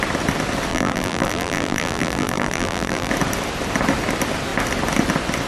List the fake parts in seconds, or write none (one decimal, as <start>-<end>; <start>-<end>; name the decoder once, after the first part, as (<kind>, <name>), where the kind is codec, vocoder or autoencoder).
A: 0.7-3.1 (vocoder, BigVGAN v2)